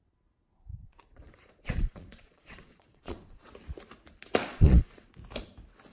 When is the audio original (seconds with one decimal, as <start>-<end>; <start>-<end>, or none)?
0.0-0.7; 3.5-4.5; 5.1-5.9